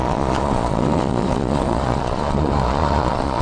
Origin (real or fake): fake